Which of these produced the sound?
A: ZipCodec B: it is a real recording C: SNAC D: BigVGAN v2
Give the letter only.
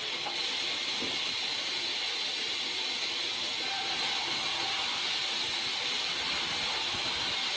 B